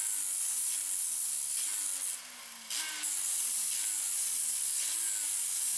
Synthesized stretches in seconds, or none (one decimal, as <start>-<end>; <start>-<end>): none